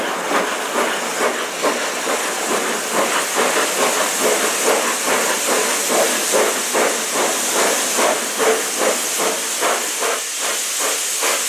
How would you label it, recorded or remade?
recorded